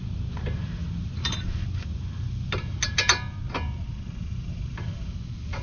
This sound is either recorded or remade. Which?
recorded